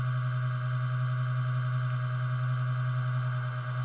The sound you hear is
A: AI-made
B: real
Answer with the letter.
B